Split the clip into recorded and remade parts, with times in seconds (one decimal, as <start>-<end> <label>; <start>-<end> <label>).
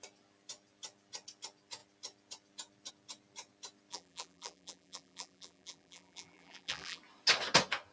0.0-3.9 recorded; 3.9-7.0 remade; 7.0-7.9 recorded